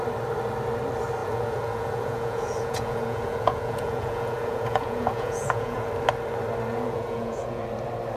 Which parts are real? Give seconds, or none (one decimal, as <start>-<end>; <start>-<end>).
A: 0.0-1.2; 5.9-6.7; 7.6-8.2